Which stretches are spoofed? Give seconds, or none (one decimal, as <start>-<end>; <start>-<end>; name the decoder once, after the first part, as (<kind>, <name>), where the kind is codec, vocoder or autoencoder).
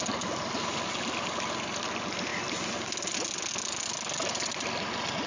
none